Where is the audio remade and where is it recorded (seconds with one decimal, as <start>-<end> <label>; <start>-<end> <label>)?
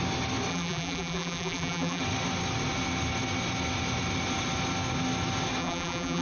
0.0-0.5 recorded; 0.5-2.0 remade; 2.0-5.6 recorded; 5.6-6.2 remade